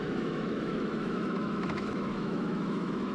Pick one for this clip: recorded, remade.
remade